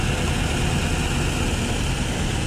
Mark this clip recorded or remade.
recorded